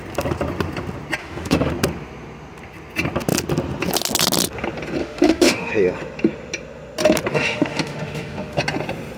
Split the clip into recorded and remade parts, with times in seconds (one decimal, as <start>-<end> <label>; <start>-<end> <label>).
0.0-1.2 recorded; 1.2-1.7 remade; 1.7-5.0 recorded; 5.0-5.7 remade; 5.7-7.3 recorded; 7.3-8.6 remade; 8.6-9.2 recorded